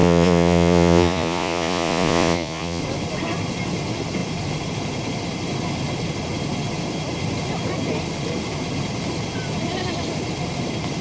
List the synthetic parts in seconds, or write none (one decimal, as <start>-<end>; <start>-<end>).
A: 0.0-2.8